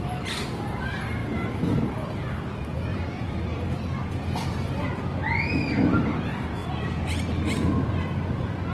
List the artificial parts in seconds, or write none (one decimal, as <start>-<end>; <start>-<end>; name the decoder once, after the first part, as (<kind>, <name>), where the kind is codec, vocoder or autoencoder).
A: 2.9-3.7 (vocoder, BigVGAN v2)